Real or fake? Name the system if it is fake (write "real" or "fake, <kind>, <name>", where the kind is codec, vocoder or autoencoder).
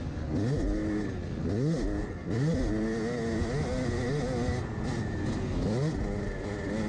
real